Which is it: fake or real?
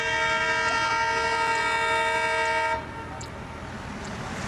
real